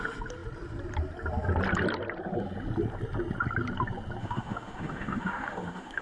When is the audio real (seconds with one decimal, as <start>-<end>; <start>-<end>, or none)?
0.0-4.2